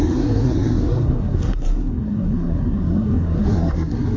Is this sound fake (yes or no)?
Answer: yes